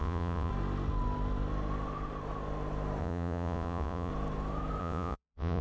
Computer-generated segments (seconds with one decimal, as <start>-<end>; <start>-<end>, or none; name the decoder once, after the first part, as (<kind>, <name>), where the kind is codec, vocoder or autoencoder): 0.0-0.5 (vocoder, Vocos); 3.0-4.1; 4.8-5.6